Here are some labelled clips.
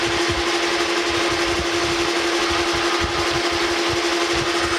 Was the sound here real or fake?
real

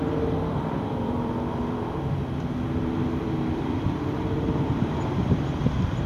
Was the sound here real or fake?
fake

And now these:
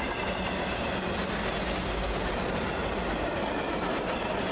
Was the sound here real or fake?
real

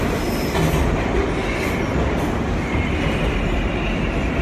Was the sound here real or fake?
real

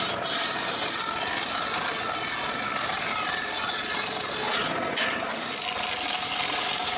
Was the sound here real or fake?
real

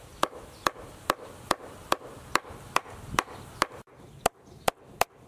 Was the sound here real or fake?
real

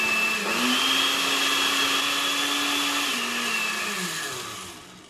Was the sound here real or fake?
real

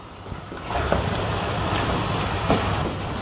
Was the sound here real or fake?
fake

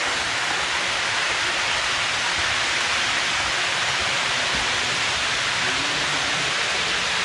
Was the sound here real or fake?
real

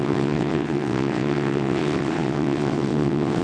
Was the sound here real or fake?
fake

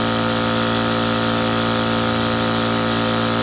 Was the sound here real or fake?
real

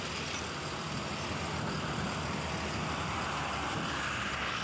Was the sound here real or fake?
real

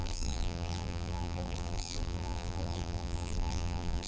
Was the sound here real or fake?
fake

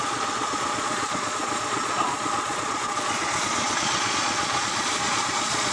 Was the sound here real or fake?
fake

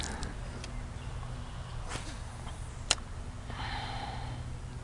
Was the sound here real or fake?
real